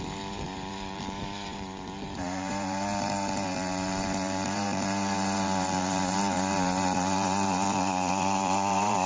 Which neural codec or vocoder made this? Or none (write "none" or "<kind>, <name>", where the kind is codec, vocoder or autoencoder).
vocoder, BigVGAN v2